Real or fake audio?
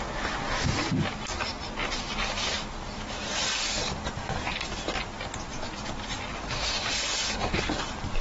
real